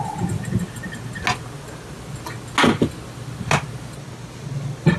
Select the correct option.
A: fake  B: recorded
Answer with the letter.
B